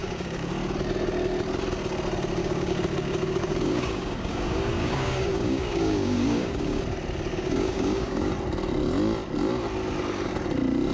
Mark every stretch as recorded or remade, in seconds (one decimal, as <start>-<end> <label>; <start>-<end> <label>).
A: 0.0-0.5 remade; 0.5-2.4 recorded; 2.4-6.8 remade; 6.8-7.3 recorded; 7.3-8.3 remade; 8.3-10.9 recorded

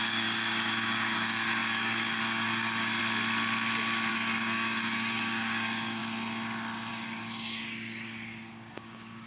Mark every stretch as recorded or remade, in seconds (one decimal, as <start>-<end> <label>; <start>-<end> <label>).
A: 0.0-3.0 remade; 3.0-4.1 recorded; 4.1-6.0 remade; 6.0-6.9 recorded; 6.9-9.3 remade

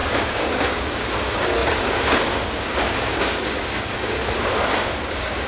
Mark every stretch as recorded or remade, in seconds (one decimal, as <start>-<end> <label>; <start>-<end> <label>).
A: 0.0-4.2 remade; 4.2-4.8 recorded; 4.8-5.5 remade